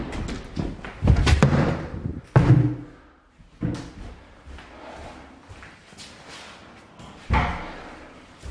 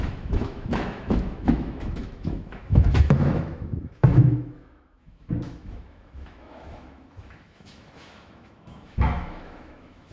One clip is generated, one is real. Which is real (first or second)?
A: first